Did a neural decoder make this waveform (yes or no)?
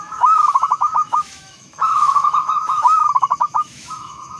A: yes